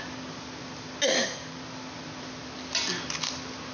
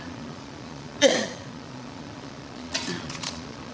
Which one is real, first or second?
first